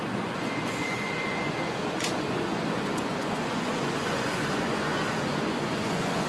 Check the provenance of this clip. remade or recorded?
remade